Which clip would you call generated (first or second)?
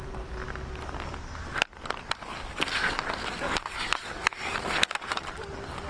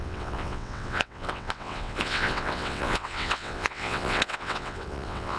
second